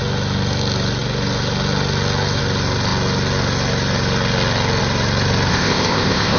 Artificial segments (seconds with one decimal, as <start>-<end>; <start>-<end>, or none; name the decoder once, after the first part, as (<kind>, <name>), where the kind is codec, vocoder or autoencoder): 5.5-6.4 (codec, ZipCodec)